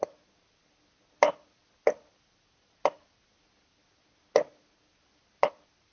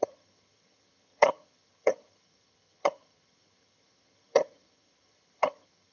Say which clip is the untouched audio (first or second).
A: first